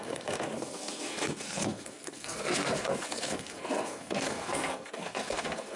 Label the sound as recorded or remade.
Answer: remade